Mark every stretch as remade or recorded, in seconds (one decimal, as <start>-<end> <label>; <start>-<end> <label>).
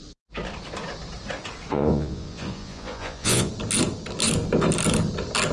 0.0-1.7 recorded; 1.7-3.5 remade; 3.5-5.5 recorded